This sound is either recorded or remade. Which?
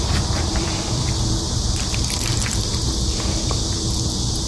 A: remade